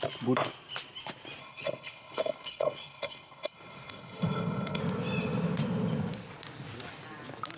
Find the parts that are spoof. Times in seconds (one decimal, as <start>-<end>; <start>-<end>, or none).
1.4-4.8